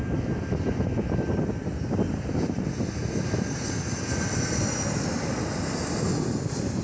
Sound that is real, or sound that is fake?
real